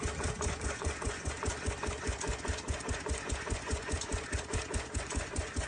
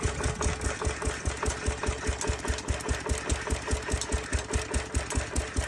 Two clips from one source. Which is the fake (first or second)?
first